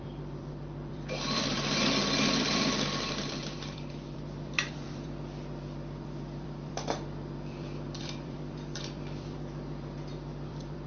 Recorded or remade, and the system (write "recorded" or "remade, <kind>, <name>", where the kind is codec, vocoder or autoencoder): remade, vocoder, BigVGAN v2